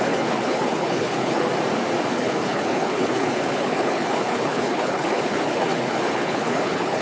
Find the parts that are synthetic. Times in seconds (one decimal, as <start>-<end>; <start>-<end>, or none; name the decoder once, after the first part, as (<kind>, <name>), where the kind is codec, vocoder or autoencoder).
0.0-1.5 (codec, HILCodec); 2.1-7.0